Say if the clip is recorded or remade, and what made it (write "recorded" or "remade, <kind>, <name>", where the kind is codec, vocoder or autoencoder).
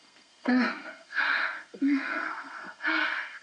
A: remade, codec, SNAC